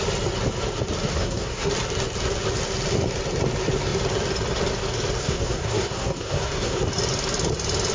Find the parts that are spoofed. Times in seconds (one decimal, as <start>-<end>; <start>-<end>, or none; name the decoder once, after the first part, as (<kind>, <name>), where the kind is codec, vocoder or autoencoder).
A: 1.1-1.7 (codec, SNAC); 5.2-6.8